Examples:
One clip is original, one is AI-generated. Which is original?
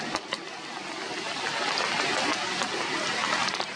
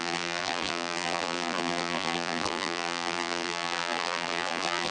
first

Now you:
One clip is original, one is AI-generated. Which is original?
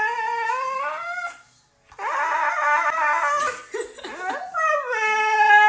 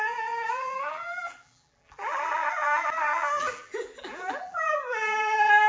first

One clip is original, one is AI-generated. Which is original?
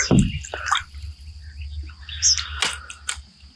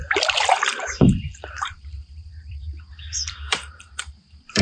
first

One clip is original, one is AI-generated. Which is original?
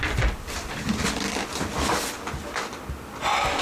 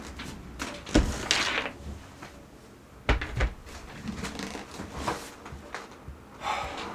second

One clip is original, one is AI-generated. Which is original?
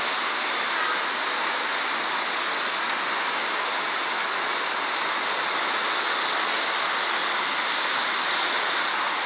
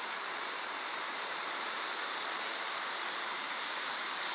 first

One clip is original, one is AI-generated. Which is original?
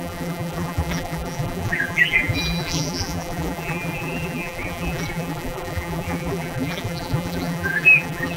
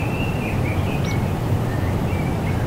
second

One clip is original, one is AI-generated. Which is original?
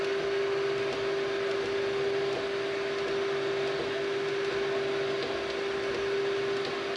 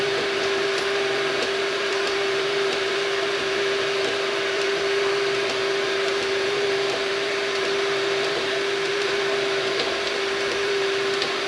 first